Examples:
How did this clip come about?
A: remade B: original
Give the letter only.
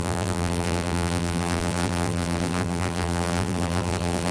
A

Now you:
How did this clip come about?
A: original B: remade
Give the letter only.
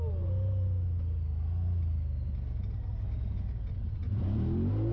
A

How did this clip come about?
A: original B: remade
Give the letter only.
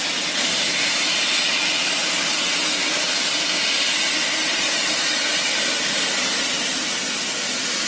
A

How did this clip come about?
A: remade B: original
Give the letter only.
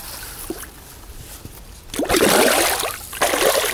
B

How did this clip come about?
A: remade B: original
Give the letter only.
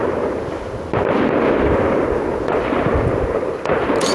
B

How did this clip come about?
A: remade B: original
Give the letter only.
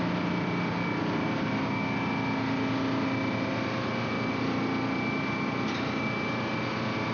B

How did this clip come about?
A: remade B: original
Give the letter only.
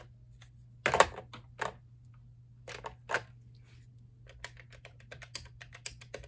B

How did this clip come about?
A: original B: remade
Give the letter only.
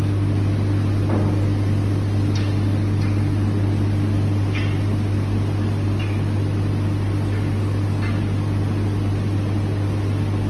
A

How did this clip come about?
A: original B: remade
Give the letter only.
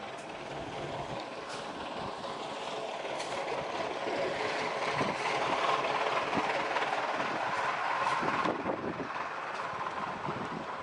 B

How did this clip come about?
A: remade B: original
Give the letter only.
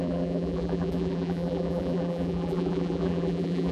A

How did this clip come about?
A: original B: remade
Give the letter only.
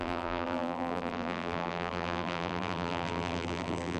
B